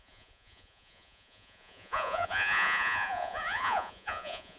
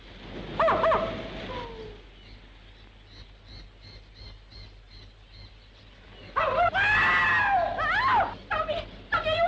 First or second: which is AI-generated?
first